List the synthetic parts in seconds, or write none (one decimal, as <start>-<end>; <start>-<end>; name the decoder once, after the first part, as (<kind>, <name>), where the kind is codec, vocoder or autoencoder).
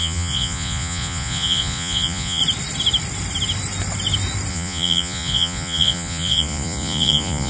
0.0-2.4 (vocoder, Vocos); 4.5-7.5